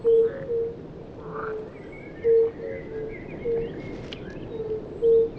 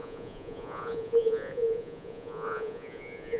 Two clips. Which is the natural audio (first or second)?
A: first